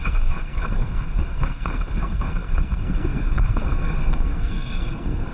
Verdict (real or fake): fake